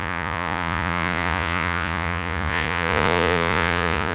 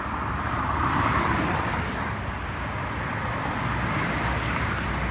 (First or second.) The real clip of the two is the second